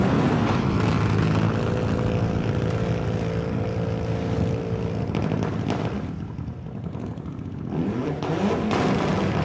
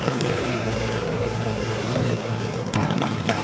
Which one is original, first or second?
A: first